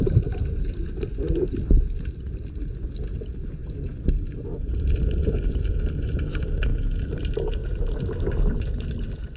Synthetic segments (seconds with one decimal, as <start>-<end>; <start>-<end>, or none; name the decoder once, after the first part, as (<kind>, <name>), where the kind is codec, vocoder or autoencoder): 3.6-5.3 (vocoder, BigVGAN v2)